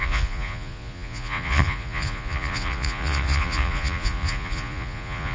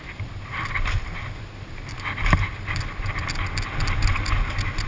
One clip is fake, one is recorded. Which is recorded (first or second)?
second